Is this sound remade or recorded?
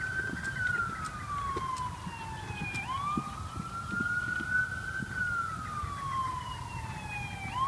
recorded